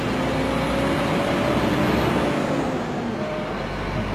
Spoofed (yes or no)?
no